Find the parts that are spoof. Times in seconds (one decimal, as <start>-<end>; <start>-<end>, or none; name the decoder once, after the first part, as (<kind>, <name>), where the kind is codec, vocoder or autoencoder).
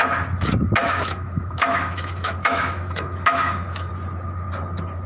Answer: 0.8-3.9 (autoencoder, DAC-VAE)